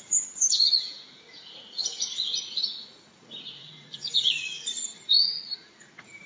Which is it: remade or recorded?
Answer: remade